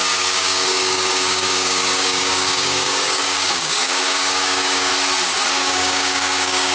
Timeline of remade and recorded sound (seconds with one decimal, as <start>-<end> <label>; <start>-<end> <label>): 0.0-4.9 remade; 4.9-5.5 recorded; 5.5-6.7 remade